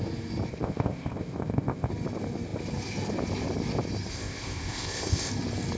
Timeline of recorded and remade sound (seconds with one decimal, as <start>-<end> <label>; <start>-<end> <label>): 0.0-0.5 recorded; 0.5-1.9 remade; 1.9-4.1 recorded; 4.1-5.3 remade; 5.3-5.8 recorded